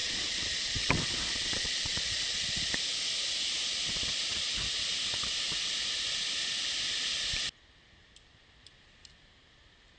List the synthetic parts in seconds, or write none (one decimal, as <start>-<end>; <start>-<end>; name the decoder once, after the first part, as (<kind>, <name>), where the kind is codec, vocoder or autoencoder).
0.0-2.7 (vocoder, Vocos); 4.3-4.9